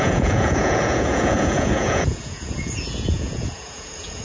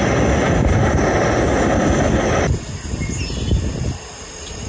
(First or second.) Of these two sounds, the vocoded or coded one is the first